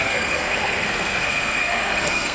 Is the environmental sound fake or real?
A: fake